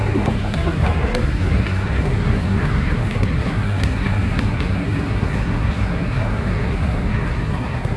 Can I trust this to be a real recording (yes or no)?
no